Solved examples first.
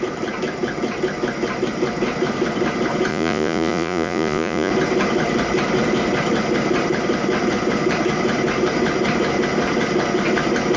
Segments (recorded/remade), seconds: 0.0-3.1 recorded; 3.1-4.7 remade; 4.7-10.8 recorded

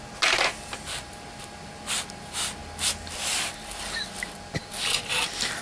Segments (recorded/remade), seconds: 0.0-5.6 recorded

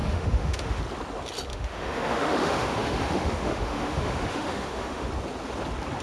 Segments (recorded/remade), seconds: 0.0-0.8 remade; 0.8-1.5 recorded; 1.5-5.1 remade; 5.1-6.0 recorded

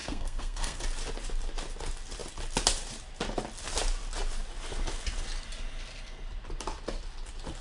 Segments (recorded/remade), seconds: 0.0-0.8 remade; 0.8-7.6 recorded

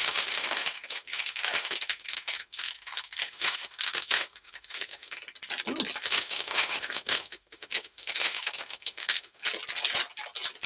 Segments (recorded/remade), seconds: 0.0-5.2 remade; 5.2-6.0 recorded; 6.0-9.4 remade; 9.4-10.7 recorded